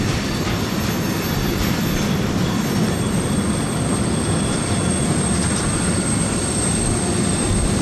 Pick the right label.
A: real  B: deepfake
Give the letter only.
A